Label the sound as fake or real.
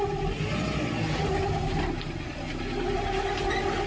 real